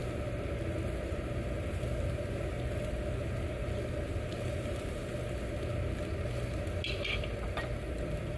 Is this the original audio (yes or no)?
yes